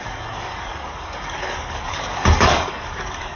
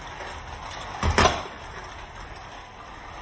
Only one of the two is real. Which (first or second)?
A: second